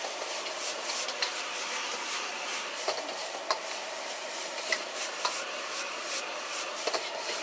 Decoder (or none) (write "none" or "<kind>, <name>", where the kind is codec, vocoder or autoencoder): vocoder, BigVGAN v2